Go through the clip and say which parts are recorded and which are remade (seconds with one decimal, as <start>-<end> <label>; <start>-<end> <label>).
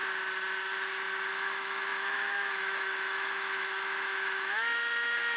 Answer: 0.0-1.3 recorded; 1.3-5.4 remade